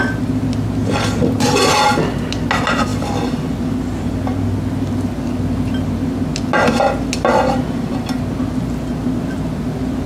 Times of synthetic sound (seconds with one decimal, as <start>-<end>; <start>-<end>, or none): none